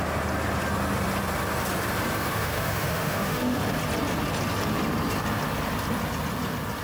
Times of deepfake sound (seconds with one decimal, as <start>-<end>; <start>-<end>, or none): 2.3-3.6